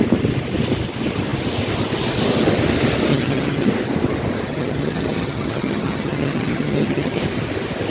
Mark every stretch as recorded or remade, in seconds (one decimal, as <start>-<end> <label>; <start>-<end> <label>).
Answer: 0.0-3.1 recorded; 3.1-3.7 remade; 3.7-4.5 recorded; 4.5-7.2 remade; 7.2-7.9 recorded